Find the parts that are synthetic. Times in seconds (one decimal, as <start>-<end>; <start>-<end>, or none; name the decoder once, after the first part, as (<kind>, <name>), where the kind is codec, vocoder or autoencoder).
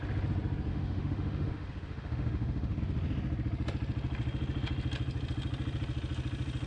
0.7-2.8 (autoencoder, DAC-VAE)